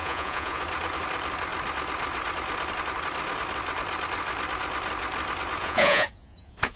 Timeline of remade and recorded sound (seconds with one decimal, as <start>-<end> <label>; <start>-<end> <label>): 0.0-0.6 remade; 0.6-5.6 recorded; 5.6-6.8 remade